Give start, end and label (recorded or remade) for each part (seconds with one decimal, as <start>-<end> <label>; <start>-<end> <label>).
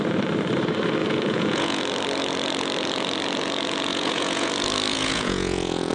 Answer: 0.0-1.0 recorded; 1.0-1.8 remade; 1.8-3.9 recorded; 3.9-4.5 remade; 4.5-4.9 recorded; 4.9-5.9 remade